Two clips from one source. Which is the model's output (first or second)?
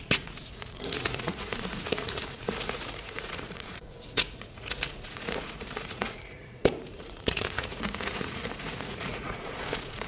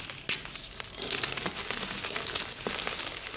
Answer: first